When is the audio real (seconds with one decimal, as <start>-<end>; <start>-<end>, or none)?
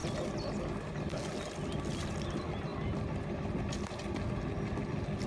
0.0-5.3